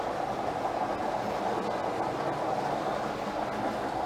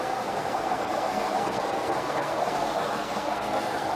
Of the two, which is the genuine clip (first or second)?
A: first